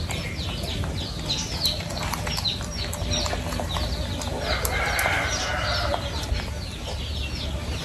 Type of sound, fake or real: real